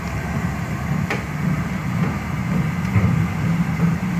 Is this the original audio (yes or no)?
yes